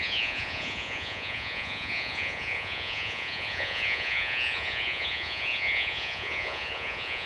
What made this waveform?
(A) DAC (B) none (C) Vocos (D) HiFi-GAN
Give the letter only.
C